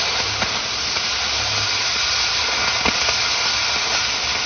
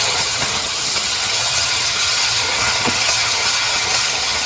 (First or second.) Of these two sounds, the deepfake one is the second